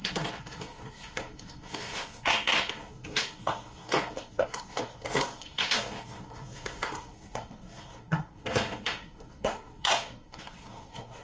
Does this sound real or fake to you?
fake